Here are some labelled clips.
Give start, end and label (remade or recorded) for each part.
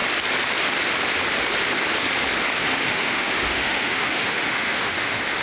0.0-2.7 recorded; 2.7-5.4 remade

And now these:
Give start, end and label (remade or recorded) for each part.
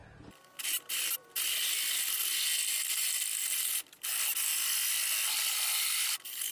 0.0-6.5 recorded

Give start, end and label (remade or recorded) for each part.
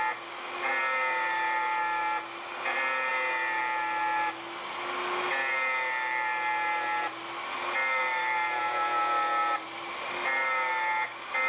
0.0-11.5 recorded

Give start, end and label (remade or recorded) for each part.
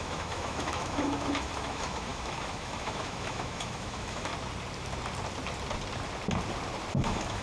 0.0-4.3 remade; 4.3-6.9 recorded; 6.9-7.4 remade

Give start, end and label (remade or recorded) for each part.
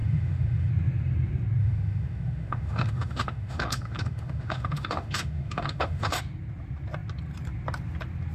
0.0-0.7 remade; 0.7-1.6 recorded; 1.6-6.2 remade; 6.2-8.3 recorded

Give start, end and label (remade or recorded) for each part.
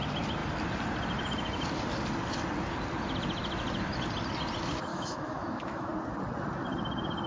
0.0-4.9 recorded; 4.9-5.9 remade; 5.9-7.3 recorded